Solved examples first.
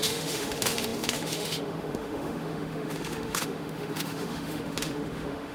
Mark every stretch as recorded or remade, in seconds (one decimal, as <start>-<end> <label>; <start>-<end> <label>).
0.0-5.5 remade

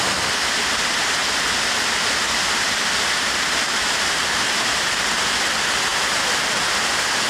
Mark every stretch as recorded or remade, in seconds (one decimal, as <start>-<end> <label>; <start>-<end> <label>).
0.0-7.3 recorded

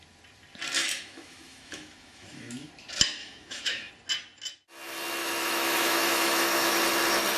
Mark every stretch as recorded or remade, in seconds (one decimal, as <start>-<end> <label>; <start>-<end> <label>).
0.0-0.8 recorded; 0.8-2.7 remade; 2.7-3.2 recorded; 3.2-3.9 remade; 3.9-5.2 recorded; 5.2-6.8 remade; 6.8-7.4 recorded

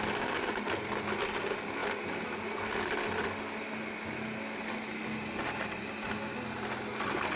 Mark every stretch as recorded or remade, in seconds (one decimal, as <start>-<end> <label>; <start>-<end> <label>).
0.0-7.4 recorded

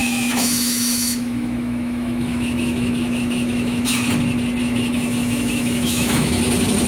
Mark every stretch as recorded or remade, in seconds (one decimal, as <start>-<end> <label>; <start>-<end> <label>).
0.0-4.1 remade; 4.1-4.6 recorded; 4.6-6.4 remade; 6.4-6.9 recorded

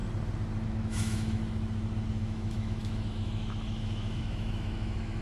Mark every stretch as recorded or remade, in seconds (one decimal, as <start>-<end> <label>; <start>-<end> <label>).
0.0-0.8 recorded; 0.8-1.4 remade; 1.4-2.1 recorded; 2.1-5.2 remade